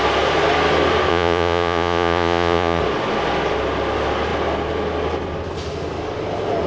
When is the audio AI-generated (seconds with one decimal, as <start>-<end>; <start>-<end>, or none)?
1.1-2.8

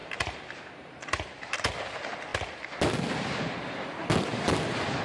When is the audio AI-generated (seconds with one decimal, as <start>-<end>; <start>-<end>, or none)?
0.0-1.7